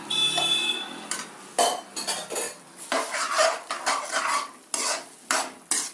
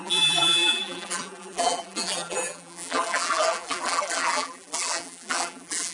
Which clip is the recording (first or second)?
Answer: first